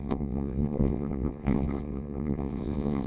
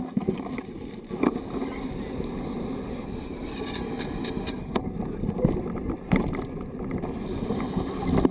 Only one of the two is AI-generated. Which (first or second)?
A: first